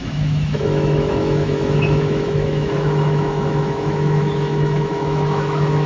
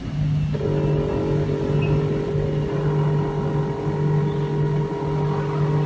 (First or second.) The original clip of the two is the second